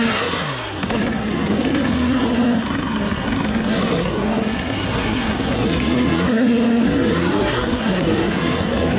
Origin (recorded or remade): remade